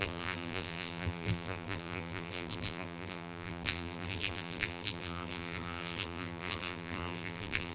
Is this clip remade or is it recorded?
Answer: remade